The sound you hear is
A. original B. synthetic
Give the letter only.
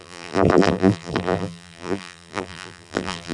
B